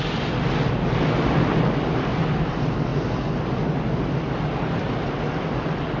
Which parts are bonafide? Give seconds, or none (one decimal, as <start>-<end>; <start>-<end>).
0.0-6.0